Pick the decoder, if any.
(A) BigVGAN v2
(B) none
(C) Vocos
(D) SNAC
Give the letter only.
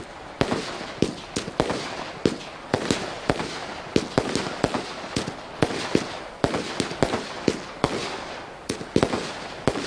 A